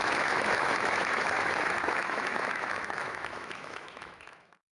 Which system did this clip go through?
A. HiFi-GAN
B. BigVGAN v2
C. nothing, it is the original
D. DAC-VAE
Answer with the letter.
D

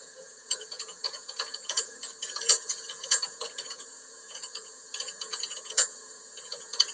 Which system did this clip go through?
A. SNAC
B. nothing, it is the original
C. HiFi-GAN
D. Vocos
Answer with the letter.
D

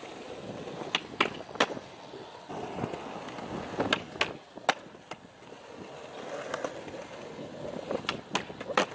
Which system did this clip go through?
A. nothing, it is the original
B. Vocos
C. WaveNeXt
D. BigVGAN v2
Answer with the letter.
A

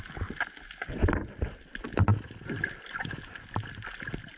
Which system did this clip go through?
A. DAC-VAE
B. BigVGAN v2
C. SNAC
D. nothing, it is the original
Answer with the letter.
D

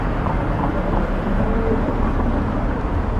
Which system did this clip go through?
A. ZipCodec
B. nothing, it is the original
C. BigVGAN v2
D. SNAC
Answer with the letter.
B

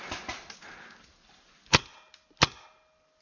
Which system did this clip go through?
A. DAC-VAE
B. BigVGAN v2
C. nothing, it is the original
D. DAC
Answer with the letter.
C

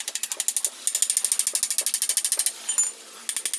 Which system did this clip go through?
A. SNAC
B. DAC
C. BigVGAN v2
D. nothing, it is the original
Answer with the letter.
D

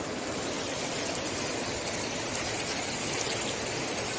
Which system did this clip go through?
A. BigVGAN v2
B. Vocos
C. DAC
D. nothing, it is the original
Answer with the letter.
A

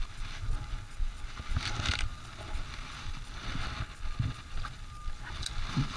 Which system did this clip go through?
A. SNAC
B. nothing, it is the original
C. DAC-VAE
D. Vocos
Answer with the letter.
B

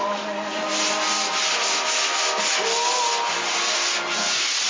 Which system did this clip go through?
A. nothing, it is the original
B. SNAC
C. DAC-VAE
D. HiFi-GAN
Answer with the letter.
A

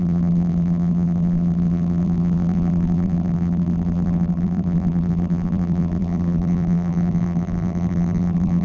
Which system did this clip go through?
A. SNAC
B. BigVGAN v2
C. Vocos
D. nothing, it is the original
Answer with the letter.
B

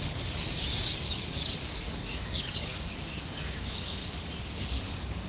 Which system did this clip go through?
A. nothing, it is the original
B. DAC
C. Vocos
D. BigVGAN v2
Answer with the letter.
B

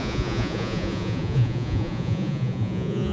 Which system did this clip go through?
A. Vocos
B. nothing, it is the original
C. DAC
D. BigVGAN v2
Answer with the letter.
A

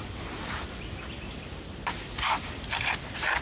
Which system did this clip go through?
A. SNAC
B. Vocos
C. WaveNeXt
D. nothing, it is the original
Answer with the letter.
D